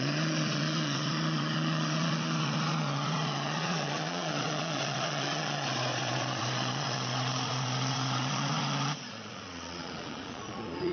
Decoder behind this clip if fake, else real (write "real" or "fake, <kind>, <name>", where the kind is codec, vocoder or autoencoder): fake, vocoder, Vocos